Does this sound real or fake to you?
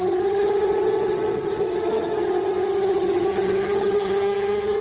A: fake